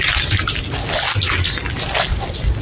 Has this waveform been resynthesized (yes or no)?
no